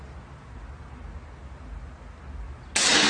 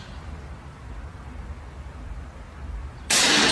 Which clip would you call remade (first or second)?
second